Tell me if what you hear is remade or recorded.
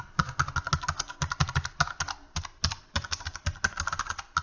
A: recorded